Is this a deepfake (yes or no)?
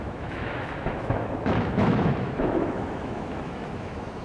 yes